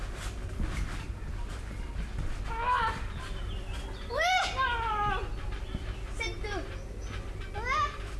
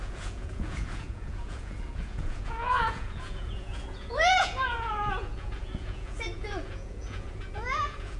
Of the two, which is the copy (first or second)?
second